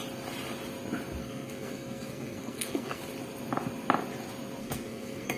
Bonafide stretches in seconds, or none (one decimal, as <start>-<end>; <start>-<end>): 0.0-1.2; 3.0-4.6